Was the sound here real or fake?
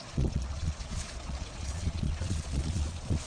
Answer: fake